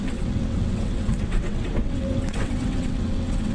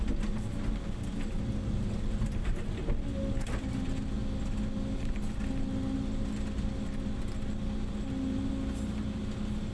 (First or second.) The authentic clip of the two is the second